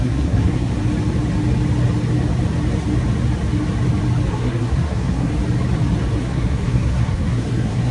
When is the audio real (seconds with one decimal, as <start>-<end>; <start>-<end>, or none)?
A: 0.7-4.3; 5.3-6.2